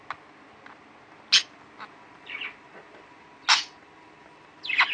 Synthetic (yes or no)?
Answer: no